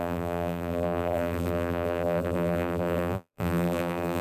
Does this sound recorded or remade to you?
remade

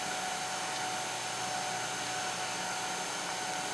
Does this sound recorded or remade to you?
recorded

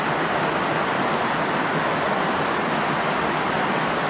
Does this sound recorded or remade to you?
recorded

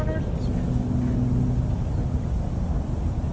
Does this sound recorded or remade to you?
recorded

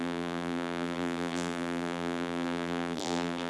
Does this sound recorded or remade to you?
remade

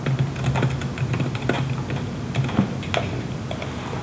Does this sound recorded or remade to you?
recorded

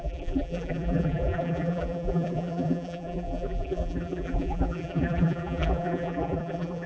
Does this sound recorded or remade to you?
remade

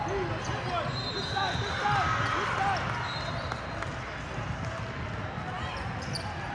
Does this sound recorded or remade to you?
recorded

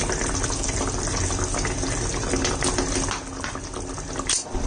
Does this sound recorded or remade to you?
recorded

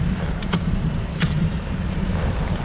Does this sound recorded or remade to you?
remade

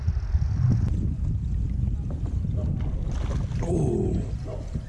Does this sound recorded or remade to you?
recorded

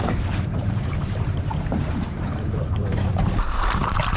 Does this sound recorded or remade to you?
remade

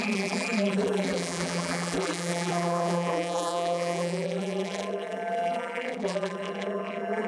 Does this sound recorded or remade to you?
remade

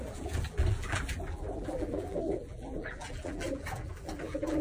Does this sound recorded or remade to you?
remade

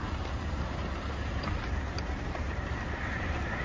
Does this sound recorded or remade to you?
remade